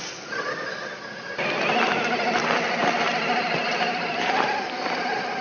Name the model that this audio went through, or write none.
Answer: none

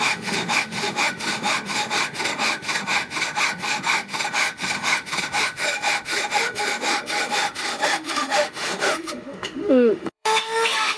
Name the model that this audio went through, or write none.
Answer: autoencoder, DAC-VAE